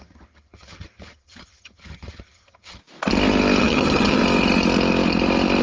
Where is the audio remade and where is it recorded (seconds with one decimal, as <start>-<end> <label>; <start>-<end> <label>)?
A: 0.0-2.8 remade; 2.8-3.6 recorded; 3.6-4.2 remade; 4.2-5.6 recorded